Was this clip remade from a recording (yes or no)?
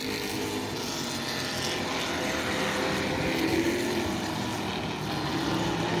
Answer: no